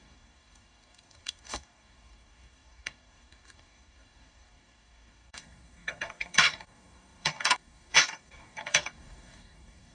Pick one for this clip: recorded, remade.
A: remade